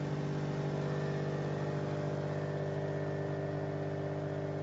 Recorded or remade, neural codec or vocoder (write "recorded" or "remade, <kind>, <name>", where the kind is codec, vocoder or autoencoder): recorded